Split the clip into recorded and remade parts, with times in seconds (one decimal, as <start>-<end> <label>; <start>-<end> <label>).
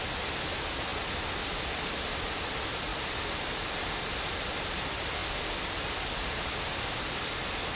0.0-7.8 recorded